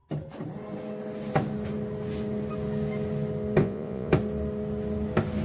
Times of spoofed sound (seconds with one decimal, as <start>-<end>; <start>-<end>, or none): 3.6-4.1